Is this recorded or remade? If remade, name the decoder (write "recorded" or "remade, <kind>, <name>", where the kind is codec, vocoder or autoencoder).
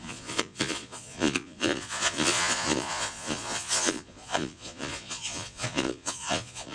remade, vocoder, Vocos